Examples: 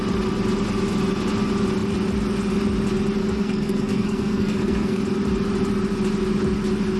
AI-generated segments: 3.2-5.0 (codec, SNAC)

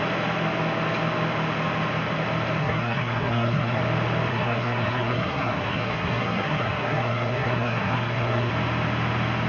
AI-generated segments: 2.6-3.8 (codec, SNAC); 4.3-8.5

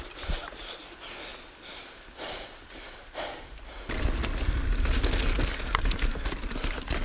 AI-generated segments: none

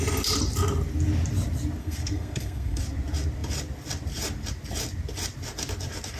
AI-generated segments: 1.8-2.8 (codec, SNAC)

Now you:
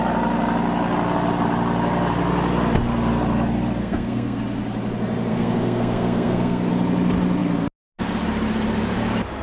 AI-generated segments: 3.8-4.4 (codec, SNAC); 5.3-6.7

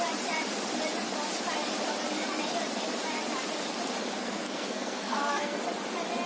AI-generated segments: 4.2-5.6 (codec, SNAC)